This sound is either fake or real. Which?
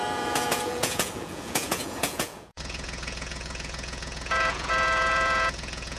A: fake